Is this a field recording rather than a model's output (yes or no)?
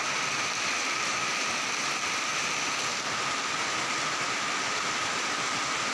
yes